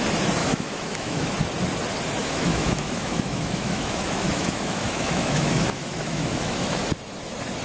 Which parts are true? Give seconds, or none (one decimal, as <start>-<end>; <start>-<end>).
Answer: 0.0-0.4; 1.3-2.2; 6.8-7.6